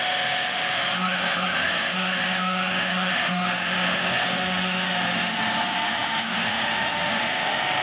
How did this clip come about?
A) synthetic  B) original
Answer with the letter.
A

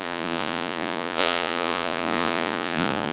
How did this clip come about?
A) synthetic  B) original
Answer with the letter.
A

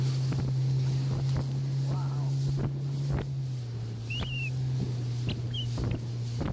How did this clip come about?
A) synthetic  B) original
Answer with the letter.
B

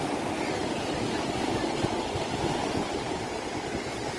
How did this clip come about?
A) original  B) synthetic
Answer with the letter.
A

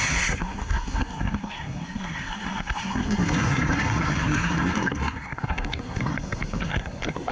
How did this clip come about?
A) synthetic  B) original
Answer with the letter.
A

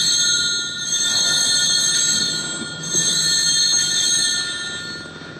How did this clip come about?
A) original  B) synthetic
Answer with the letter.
A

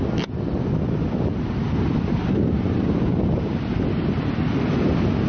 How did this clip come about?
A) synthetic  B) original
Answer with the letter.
B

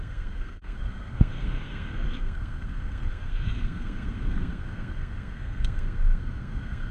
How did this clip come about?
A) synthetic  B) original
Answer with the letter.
A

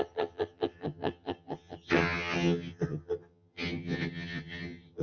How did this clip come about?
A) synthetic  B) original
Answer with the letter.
A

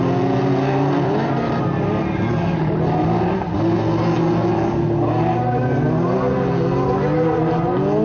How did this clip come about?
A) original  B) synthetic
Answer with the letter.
A